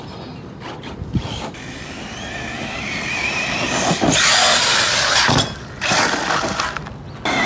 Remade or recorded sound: recorded